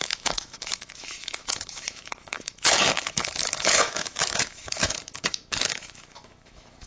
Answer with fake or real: fake